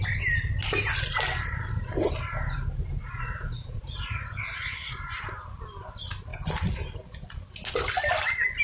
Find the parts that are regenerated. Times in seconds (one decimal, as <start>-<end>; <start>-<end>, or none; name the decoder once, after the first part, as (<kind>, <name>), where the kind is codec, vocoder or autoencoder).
3.0-4.9 (vocoder, Vocos)